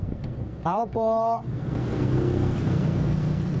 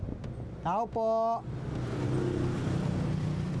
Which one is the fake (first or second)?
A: first